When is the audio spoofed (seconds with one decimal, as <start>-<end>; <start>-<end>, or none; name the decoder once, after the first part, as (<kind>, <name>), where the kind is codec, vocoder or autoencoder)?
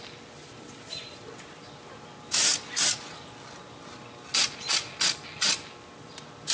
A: none